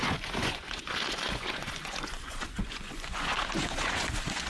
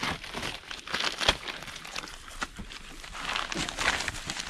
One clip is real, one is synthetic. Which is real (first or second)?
second